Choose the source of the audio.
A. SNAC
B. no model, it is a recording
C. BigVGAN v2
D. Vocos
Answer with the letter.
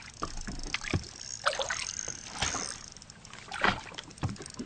B